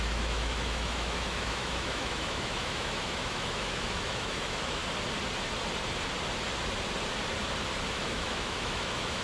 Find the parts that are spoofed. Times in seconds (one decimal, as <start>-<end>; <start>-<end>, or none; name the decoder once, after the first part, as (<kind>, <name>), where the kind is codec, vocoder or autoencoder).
0.0-4.8 (autoencoder, DAC-VAE); 7.9-9.2